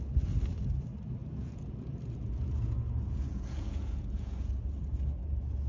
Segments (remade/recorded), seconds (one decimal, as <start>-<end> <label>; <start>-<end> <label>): 0.0-1.2 recorded; 1.2-4.6 remade; 4.6-5.7 recorded